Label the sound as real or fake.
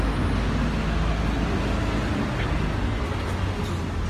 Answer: real